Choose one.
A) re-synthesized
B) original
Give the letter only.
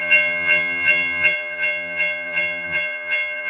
A